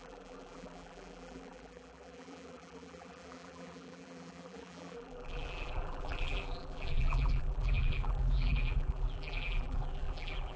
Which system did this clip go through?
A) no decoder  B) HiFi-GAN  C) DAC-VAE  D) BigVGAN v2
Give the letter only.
D